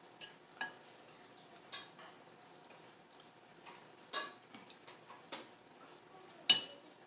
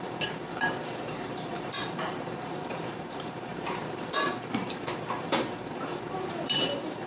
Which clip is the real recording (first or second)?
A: first